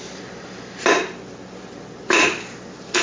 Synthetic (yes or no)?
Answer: no